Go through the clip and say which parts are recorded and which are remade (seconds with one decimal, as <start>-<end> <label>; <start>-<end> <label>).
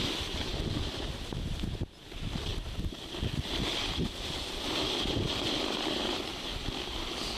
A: 0.0-7.4 recorded